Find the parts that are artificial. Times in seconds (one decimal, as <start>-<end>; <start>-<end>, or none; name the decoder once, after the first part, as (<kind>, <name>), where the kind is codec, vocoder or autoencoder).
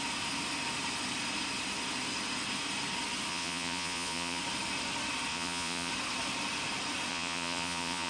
3.3-4.4 (vocoder, Vocos); 5.3-5.9; 7.1-8.1